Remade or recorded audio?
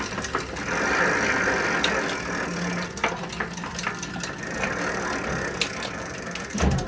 recorded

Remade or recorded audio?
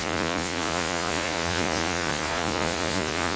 remade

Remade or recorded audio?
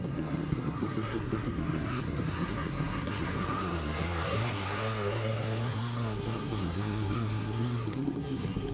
remade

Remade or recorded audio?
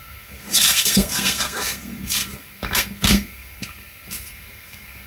remade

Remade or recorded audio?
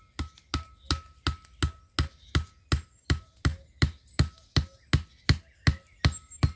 recorded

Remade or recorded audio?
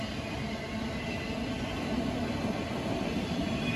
recorded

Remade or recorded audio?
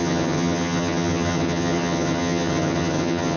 remade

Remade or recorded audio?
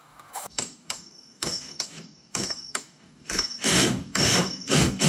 remade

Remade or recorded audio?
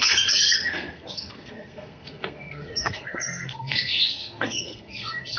remade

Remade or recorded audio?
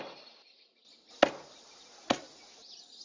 recorded